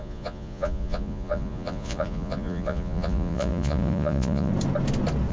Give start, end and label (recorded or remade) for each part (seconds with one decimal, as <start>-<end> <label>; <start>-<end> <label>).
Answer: 0.0-4.5 remade; 4.5-5.3 recorded